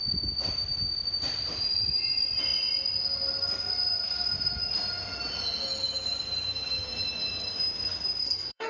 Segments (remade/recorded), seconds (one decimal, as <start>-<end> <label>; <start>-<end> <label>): 0.0-8.2 recorded; 8.2-8.7 remade